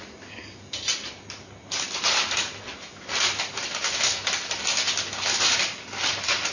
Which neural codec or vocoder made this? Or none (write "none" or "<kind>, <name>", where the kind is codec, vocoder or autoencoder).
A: none